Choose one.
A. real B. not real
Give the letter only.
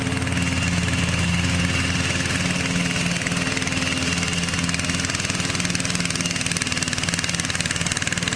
A